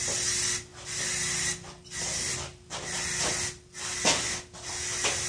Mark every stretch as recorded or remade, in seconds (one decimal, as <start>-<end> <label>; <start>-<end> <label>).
0.0-5.3 recorded